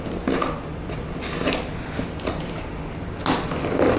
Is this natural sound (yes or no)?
yes